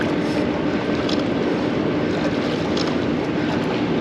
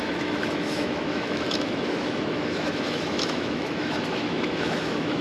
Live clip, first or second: first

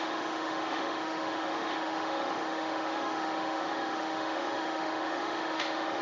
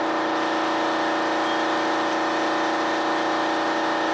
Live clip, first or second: second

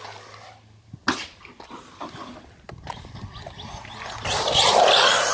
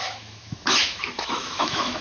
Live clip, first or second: first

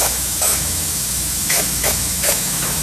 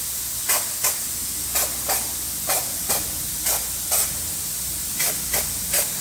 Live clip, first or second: second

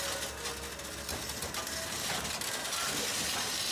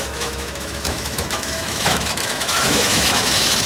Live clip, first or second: first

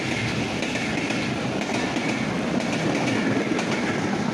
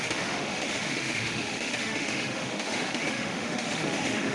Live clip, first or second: first